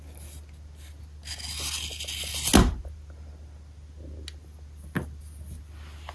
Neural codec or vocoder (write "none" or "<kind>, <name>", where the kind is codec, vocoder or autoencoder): none